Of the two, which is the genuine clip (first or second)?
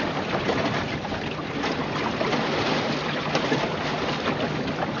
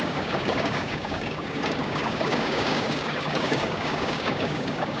first